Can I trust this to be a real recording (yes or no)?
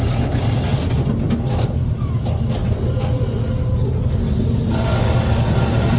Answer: yes